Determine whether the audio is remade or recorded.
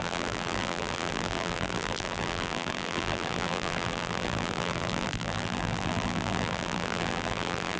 remade